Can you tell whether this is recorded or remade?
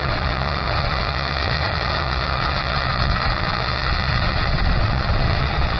remade